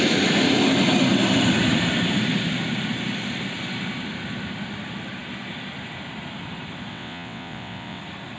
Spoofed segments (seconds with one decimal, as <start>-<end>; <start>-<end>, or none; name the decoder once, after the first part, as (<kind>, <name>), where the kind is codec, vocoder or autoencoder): 6.9-8.0 (vocoder, WaveNeXt)